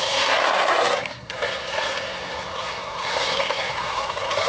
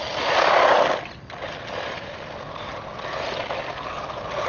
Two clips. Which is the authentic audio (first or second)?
second